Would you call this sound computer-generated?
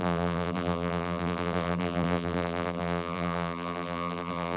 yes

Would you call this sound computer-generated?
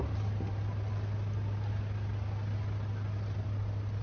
no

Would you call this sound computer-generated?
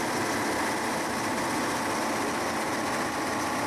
no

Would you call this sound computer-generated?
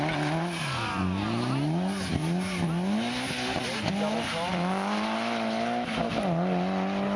no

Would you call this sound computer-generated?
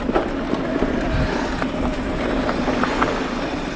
no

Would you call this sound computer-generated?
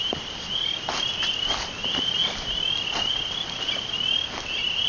no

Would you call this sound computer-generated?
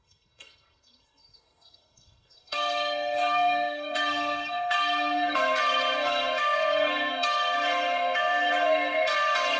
yes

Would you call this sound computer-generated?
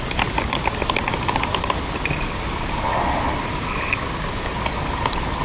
no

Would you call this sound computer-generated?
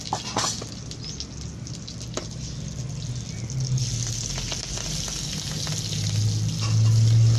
no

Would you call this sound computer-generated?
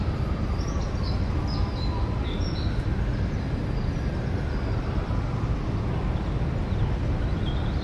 no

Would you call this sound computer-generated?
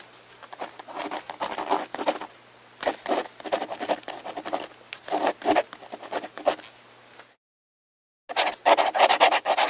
no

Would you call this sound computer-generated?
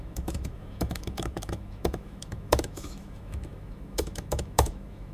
yes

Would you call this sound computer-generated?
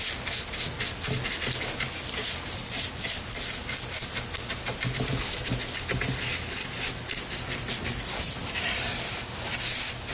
no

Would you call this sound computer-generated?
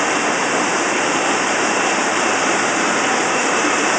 yes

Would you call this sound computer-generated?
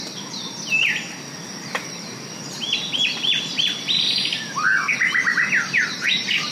no